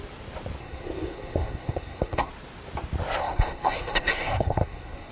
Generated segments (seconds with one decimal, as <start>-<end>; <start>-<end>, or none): 0.6-2.3; 3.2-5.1